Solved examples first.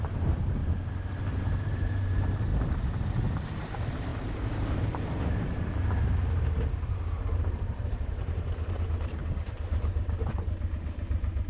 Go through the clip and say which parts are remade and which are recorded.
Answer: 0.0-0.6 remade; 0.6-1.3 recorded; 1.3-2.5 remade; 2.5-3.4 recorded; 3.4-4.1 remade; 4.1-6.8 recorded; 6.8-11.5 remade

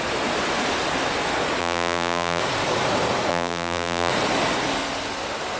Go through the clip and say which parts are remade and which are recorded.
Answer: 0.0-1.6 recorded; 1.6-2.4 remade; 2.4-3.3 recorded; 3.3-4.1 remade; 4.1-5.6 recorded

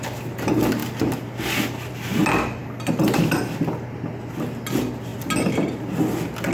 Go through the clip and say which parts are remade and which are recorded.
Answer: 0.0-6.5 recorded